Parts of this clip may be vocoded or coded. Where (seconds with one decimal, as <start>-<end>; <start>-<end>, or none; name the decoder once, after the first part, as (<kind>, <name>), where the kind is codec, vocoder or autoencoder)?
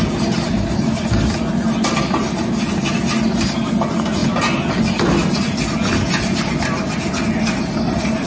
none